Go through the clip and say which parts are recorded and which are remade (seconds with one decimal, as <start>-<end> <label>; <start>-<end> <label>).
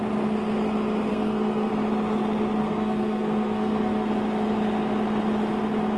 0.0-1.1 recorded; 1.1-1.7 remade; 1.7-2.6 recorded; 2.6-4.1 remade; 4.1-6.0 recorded